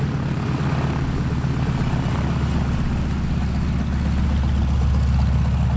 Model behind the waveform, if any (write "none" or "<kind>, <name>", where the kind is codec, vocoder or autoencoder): none